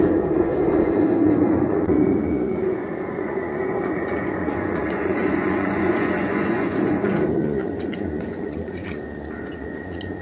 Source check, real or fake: fake